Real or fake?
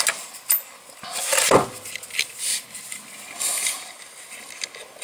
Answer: real